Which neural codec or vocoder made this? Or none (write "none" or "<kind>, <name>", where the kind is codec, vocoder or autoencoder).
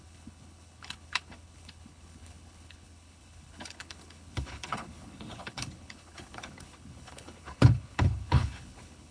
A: codec, HILCodec